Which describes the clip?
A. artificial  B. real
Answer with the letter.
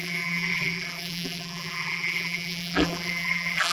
A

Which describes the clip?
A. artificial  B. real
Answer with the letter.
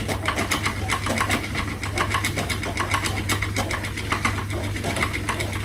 B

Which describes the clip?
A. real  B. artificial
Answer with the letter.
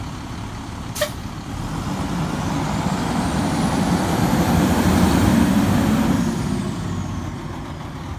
A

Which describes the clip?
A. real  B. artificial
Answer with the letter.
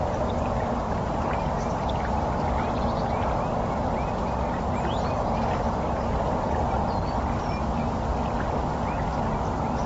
A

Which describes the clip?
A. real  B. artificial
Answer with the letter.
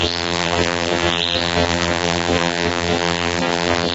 B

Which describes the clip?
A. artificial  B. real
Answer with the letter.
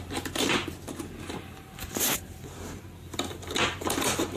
A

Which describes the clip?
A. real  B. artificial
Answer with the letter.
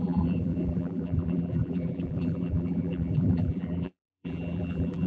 B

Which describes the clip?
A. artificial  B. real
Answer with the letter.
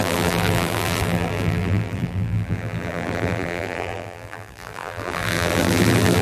A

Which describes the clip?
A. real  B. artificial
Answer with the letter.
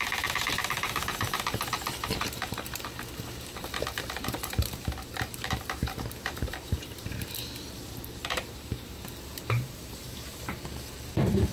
B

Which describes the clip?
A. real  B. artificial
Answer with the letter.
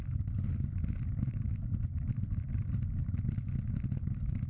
A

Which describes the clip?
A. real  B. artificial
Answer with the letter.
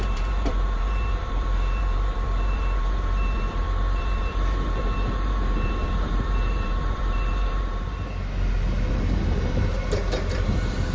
B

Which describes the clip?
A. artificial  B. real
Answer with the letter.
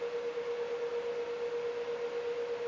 B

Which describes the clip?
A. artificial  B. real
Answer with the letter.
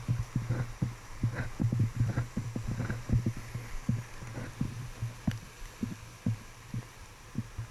B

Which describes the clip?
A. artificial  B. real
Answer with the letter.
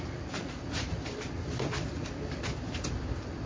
A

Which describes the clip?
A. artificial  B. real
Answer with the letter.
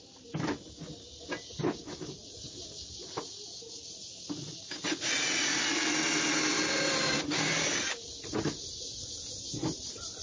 B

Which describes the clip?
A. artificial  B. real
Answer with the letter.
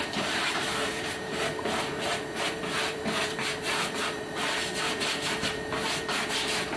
A